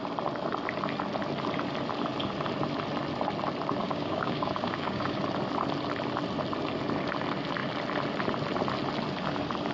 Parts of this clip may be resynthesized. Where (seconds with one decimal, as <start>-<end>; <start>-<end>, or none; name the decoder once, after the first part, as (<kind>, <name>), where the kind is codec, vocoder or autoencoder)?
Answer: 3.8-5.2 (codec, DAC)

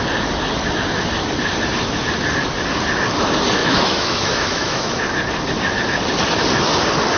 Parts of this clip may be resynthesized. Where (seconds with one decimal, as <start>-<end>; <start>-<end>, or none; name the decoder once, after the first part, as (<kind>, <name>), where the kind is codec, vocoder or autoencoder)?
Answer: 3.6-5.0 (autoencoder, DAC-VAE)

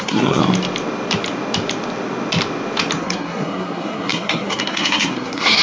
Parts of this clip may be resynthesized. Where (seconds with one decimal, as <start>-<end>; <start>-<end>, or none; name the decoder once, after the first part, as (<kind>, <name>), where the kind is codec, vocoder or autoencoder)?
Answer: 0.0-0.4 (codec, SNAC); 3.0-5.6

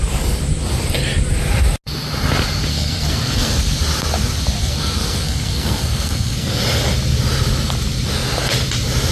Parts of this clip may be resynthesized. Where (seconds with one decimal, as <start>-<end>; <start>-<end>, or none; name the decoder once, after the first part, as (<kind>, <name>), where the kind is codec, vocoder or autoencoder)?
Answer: 2.7-3.6 (codec, SNAC); 4.6-6.6

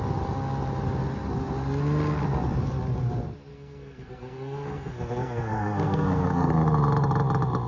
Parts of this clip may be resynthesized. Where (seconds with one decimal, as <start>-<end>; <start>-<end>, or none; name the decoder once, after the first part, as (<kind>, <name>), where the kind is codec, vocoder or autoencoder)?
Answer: 3.5-6.5 (codec, SNAC)

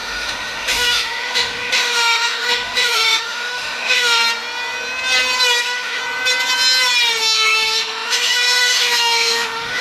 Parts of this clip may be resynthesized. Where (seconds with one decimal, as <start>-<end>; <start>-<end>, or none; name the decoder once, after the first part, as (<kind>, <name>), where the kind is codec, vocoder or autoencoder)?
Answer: 0.0-4.2 (autoencoder, DAC-VAE); 5.6-6.0; 7.2-9.8

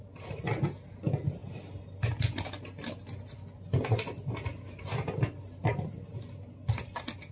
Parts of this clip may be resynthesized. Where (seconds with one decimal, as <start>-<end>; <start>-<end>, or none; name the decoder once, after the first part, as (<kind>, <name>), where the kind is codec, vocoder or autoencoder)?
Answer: none

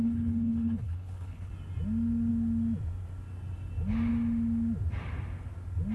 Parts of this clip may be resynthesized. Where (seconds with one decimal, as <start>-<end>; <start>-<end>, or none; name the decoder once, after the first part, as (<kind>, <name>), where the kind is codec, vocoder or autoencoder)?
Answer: 0.0-1.5 (codec, HILCodec)